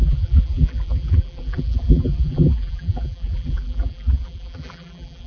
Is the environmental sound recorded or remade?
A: remade